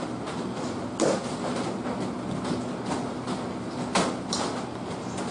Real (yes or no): yes